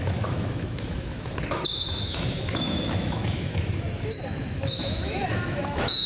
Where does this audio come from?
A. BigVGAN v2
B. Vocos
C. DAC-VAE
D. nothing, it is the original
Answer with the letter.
C